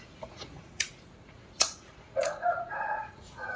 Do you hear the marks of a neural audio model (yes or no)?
yes